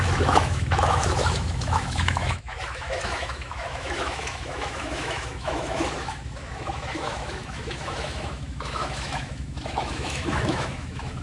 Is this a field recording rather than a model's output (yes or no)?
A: no